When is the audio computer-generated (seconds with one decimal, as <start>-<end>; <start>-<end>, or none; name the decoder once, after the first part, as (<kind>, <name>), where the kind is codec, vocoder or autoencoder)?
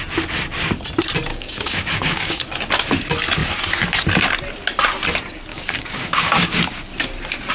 1.3-2.4 (codec, DAC); 5.5-6.6